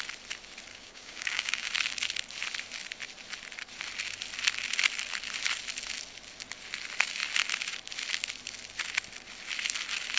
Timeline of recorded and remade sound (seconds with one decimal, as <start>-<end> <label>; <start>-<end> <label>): 0.0-0.7 recorded; 0.7-1.7 remade; 1.7-10.2 recorded